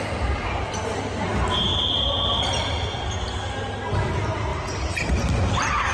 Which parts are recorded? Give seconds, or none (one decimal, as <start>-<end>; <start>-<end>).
0.0-5.9